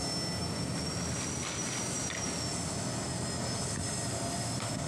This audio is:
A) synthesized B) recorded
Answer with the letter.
B